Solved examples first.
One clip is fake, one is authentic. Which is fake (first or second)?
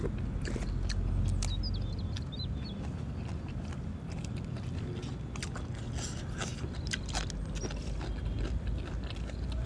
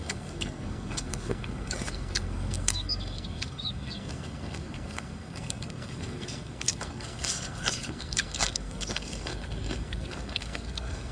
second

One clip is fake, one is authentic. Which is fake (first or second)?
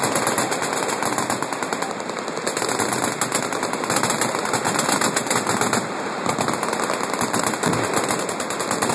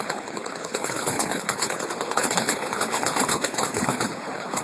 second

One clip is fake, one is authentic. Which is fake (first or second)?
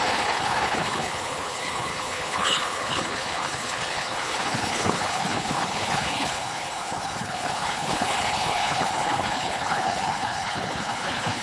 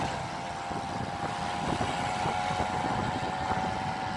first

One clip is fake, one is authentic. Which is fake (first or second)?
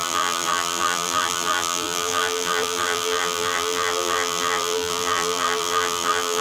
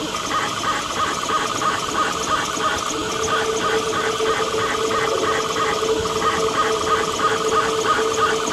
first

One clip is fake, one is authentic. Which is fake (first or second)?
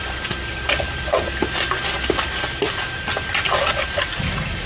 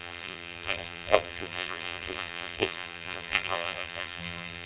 second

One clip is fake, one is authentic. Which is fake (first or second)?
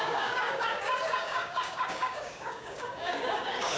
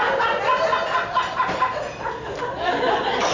first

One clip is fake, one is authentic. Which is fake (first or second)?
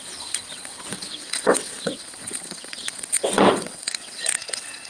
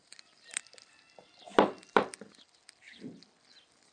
first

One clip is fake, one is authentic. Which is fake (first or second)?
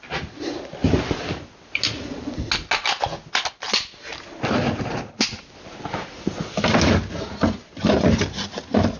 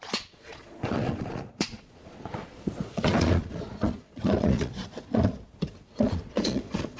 second